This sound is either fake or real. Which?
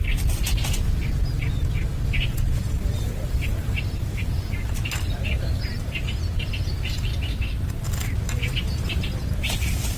real